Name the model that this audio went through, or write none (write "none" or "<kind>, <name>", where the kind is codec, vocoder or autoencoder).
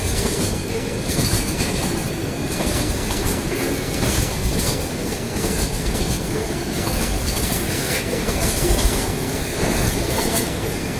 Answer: codec, SNAC